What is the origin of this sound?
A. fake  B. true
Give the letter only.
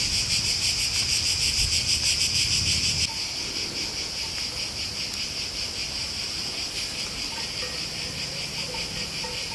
B